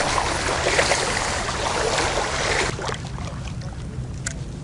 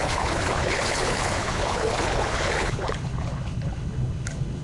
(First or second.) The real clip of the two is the first